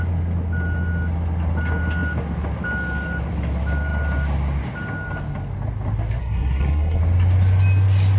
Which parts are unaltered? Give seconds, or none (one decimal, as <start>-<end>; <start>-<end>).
0.0-6.2; 7.0-8.2